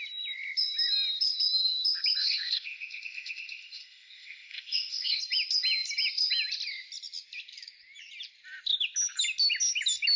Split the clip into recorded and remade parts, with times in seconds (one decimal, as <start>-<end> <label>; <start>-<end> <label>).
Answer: 0.0-2.2 recorded; 2.2-5.2 remade; 5.2-10.2 recorded